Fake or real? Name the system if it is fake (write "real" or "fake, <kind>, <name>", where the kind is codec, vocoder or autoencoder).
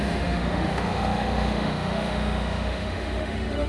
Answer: fake, autoencoder, DAC-VAE